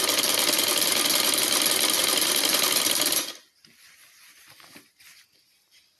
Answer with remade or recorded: remade